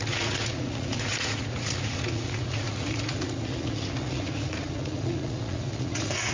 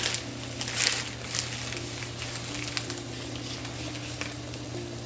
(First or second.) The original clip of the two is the second